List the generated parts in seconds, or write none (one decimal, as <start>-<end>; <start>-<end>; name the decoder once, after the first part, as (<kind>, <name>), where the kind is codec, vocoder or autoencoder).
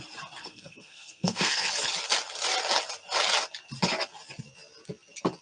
0.4-1.7 (codec, SNAC)